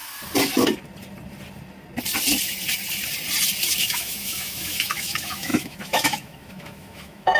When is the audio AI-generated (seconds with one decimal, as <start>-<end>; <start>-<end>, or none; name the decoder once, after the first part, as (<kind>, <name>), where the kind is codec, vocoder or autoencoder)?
3.8-7.4 (autoencoder, DAC-VAE)